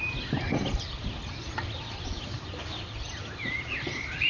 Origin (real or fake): fake